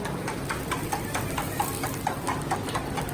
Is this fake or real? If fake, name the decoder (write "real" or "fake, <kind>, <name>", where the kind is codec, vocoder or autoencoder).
real